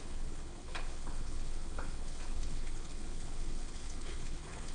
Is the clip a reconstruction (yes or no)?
yes